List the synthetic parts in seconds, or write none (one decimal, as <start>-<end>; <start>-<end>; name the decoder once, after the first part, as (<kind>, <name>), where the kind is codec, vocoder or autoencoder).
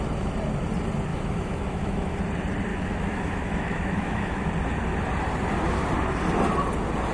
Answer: 1.1-2.2 (autoencoder, DAC-VAE); 2.7-4.5